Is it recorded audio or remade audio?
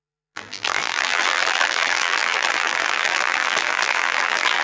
remade